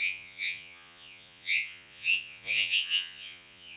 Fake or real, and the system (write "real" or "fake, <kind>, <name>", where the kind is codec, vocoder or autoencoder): fake, vocoder, Vocos